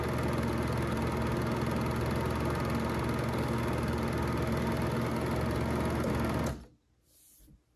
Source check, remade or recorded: recorded